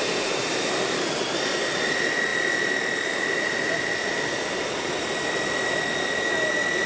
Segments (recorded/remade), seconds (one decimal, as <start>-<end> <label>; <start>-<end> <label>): 0.0-6.9 recorded